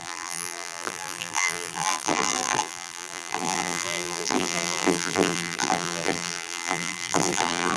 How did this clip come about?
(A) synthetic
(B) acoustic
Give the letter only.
A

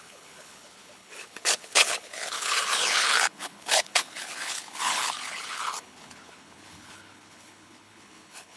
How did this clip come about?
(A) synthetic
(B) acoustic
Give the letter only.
A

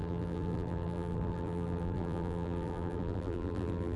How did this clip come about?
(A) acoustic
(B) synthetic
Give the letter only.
B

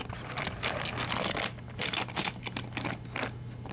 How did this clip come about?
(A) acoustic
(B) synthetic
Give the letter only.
A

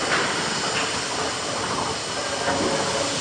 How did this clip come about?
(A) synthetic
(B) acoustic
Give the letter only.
B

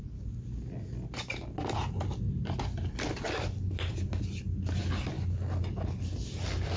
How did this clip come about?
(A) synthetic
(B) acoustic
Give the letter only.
B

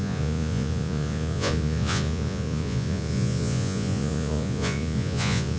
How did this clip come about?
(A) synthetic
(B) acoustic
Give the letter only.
A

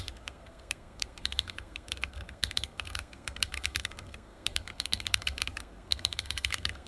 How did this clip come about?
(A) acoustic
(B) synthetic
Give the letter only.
B